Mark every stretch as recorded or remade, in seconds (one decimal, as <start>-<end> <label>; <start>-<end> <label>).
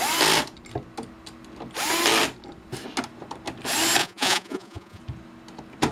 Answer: 0.0-4.0 recorded; 4.0-5.0 remade; 5.0-5.9 recorded